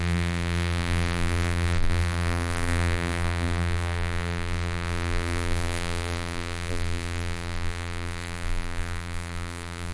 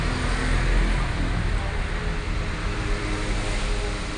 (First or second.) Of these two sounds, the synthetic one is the first